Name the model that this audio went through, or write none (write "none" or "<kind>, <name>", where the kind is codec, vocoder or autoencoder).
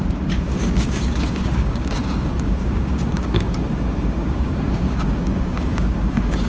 codec, DAC